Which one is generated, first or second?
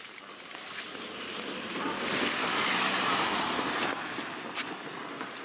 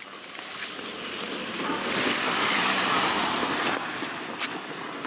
second